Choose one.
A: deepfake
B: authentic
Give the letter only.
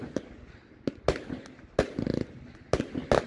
B